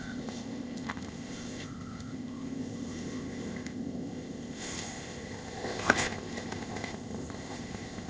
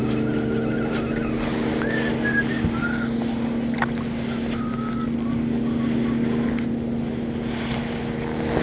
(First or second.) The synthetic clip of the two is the first